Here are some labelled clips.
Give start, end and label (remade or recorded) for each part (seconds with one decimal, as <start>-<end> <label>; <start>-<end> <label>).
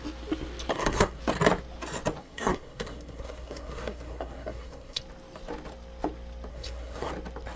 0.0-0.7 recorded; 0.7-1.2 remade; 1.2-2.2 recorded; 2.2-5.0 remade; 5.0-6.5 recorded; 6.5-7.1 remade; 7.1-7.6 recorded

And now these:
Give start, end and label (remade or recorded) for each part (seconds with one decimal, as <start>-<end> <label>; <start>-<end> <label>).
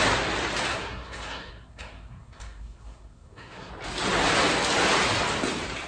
0.0-0.7 recorded; 0.7-3.7 remade; 3.7-5.9 recorded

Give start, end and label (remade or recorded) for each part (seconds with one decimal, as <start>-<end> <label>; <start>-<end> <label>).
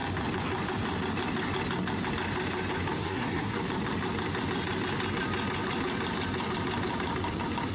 0.0-3.0 recorded; 3.0-3.6 remade; 3.6-7.7 recorded